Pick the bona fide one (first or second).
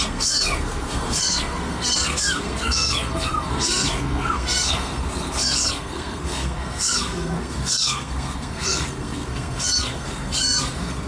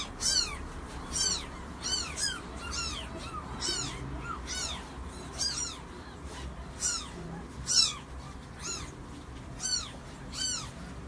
second